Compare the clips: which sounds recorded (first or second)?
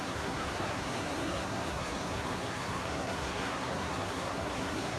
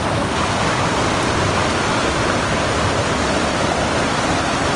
second